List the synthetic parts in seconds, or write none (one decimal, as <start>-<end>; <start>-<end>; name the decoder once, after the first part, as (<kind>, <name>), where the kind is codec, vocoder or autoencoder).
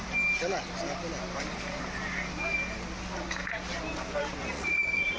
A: 4.4-5.2 (vocoder, Vocos)